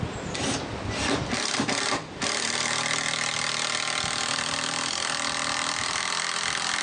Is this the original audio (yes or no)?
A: yes